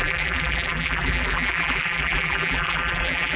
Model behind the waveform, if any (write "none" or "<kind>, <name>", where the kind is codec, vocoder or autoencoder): vocoder, BigVGAN v2